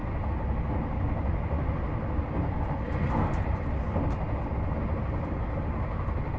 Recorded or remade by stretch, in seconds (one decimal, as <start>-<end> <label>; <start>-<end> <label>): 0.0-6.4 recorded